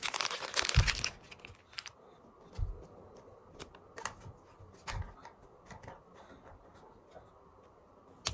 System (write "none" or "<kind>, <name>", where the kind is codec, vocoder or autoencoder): none